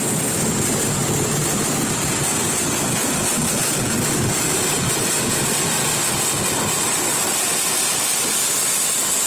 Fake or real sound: real